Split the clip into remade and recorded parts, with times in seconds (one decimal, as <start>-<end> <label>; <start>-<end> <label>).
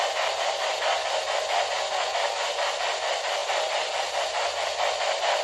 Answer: 0.0-5.4 recorded